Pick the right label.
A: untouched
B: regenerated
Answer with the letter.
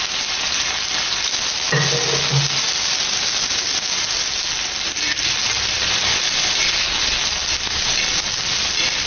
A